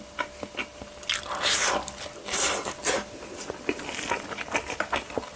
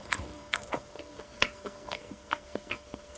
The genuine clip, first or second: first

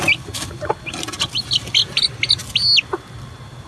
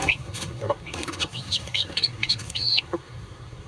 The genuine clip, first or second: first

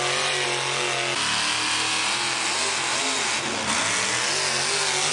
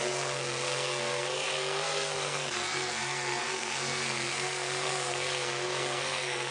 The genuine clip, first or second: first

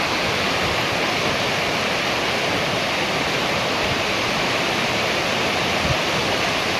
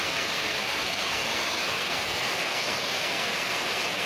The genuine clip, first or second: first